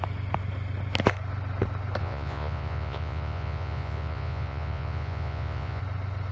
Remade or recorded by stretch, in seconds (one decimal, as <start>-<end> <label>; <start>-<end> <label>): 0.0-2.0 recorded; 2.0-5.8 remade; 5.8-6.3 recorded